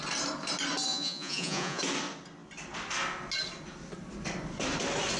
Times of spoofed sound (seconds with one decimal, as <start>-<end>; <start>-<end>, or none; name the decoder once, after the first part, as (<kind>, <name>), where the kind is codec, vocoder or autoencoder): 0.9-1.8 (vocoder, Vocos)